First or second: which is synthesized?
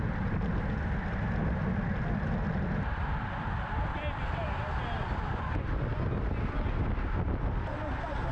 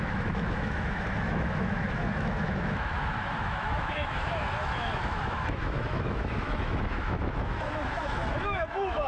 second